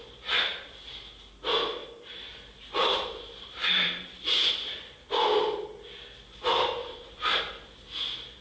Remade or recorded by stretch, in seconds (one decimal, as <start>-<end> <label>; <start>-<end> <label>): 0.0-1.8 recorded; 1.8-4.5 remade; 4.5-6.8 recorded; 6.8-7.4 remade; 7.4-8.4 recorded